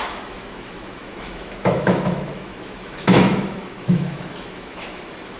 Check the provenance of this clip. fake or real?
fake